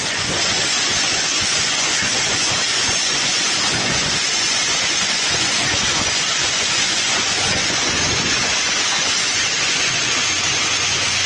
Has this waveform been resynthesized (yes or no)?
yes